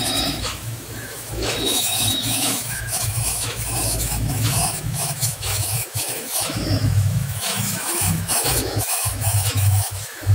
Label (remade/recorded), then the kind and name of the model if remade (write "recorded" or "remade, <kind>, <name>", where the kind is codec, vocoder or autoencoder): remade, autoencoder, DAC-VAE